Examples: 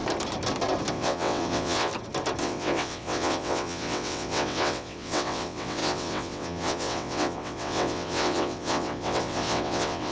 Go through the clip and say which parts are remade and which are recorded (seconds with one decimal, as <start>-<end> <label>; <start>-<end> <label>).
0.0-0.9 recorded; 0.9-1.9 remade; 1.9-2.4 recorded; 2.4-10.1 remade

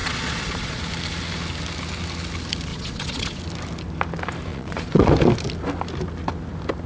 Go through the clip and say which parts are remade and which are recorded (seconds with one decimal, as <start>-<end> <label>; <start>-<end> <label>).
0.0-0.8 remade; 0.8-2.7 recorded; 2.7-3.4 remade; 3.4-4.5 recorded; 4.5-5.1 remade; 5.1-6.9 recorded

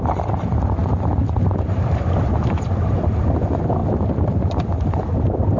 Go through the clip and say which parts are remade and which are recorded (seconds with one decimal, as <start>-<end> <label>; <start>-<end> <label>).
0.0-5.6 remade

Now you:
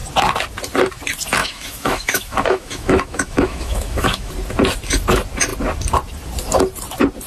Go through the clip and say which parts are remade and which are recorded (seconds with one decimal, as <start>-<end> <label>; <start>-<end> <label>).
0.0-1.4 recorded; 1.4-4.3 remade; 4.3-7.3 recorded